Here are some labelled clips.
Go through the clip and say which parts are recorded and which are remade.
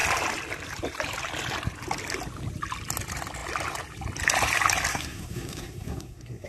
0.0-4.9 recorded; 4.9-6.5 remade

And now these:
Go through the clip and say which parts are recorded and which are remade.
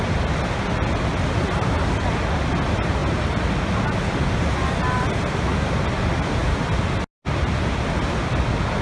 0.0-8.8 recorded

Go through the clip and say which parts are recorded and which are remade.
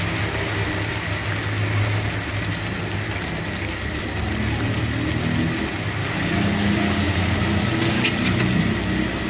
0.0-6.0 recorded; 6.0-6.5 remade; 6.5-9.3 recorded